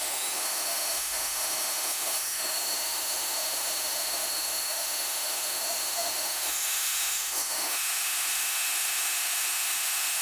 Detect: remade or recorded remade